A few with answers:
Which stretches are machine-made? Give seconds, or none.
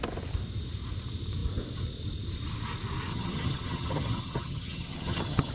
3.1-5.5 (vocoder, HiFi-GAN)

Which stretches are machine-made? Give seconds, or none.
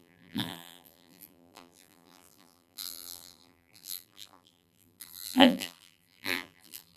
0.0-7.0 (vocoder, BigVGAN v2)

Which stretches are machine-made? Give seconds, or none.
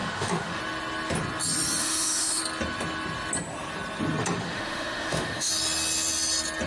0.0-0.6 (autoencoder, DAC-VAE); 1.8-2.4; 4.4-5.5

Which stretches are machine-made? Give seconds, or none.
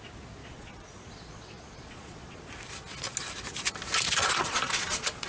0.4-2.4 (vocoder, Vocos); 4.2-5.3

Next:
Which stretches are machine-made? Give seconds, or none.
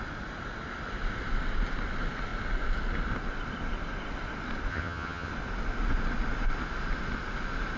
4.7-5.3 (vocoder, HiFi-GAN)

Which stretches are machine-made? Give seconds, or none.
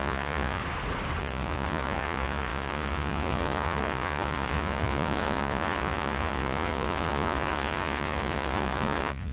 0.0-0.6 (vocoder, Vocos); 1.2-9.3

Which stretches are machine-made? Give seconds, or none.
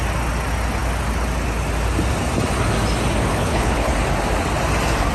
3.3-3.9 (codec, HILCodec)